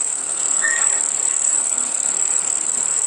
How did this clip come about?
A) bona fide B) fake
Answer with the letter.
B